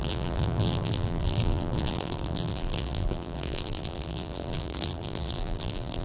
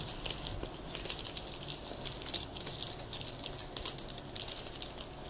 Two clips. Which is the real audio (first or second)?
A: second